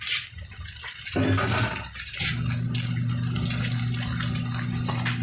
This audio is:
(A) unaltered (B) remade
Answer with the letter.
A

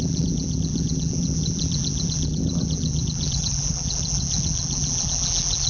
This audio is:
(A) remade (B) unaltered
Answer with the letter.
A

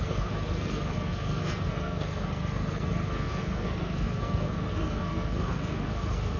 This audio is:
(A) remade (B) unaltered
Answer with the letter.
A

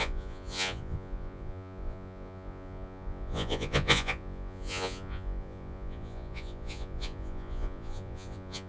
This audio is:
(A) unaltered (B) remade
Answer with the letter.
B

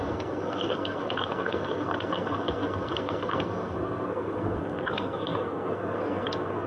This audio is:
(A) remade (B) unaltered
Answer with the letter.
A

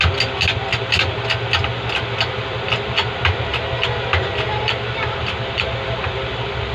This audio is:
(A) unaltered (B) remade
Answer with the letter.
A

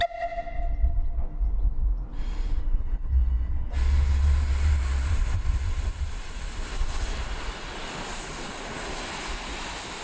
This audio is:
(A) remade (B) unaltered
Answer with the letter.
B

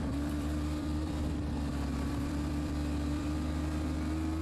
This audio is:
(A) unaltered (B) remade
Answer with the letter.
B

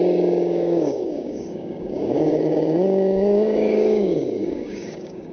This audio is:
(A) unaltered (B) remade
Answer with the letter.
B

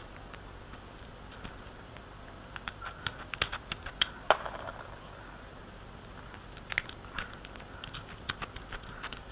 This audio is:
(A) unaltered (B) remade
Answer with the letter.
A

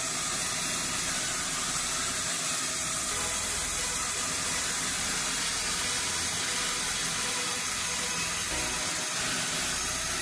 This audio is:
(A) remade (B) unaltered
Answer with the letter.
B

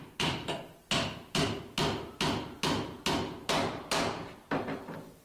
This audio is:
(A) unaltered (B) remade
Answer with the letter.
A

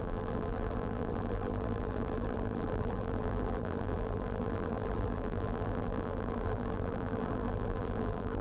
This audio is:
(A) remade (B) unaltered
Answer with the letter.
A